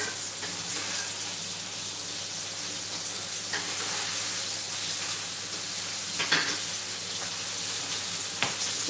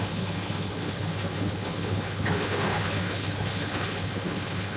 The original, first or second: first